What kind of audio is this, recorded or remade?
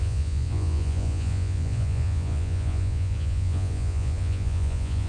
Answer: remade